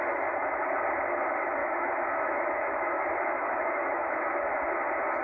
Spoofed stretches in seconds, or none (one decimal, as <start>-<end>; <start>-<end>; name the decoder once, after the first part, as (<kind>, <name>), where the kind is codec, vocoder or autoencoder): 1.6-4.7 (autoencoder, DAC-VAE)

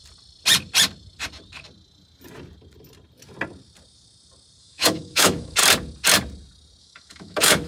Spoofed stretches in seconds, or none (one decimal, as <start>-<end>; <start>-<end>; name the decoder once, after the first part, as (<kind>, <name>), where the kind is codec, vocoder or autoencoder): 4.6-5.6 (autoencoder, DAC-VAE); 6.8-7.7

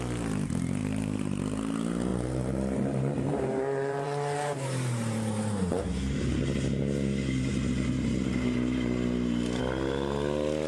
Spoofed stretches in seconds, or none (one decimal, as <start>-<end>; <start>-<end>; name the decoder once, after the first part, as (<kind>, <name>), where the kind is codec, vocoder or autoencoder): 0.8-1.4 (vocoder, BigVGAN v2); 2.1-6.3

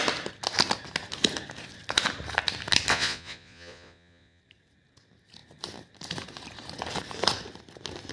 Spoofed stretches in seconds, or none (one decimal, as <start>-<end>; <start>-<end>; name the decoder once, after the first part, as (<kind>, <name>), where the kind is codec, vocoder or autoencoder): 2.9-4.4 (vocoder, Vocos)

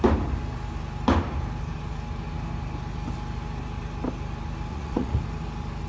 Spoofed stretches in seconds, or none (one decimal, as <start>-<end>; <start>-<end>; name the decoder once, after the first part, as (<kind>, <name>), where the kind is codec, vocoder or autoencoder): 4.7-5.2 (vocoder, Vocos)